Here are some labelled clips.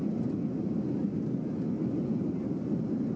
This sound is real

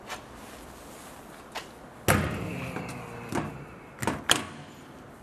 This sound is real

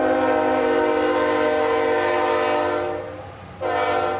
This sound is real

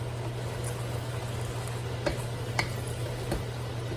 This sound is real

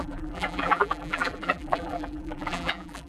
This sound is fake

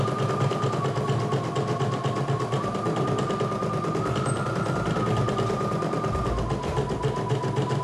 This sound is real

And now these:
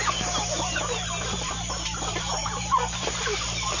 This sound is fake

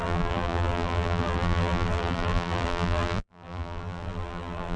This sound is fake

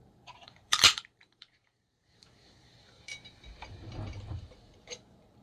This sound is fake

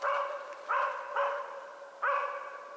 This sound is fake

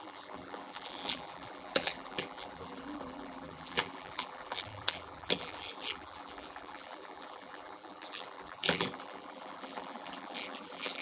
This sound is fake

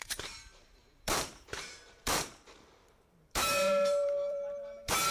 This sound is fake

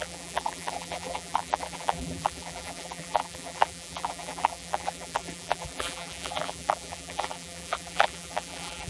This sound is fake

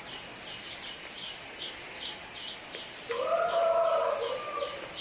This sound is real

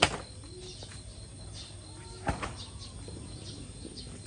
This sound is real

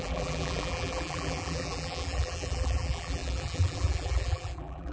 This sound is fake